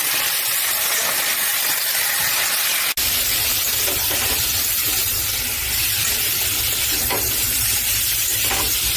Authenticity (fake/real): real